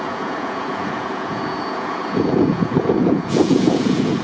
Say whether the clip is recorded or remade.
remade